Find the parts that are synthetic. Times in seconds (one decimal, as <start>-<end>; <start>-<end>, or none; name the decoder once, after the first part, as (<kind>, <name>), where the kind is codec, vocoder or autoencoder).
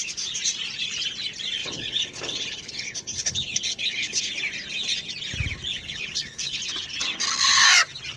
1.6-4.2 (codec, HILCodec); 5.7-6.6